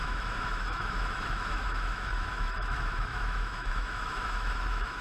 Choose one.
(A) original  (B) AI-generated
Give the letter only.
B